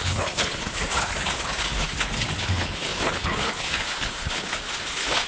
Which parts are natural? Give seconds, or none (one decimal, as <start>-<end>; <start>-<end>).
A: none